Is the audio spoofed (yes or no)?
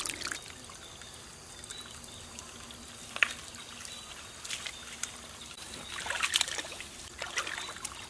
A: no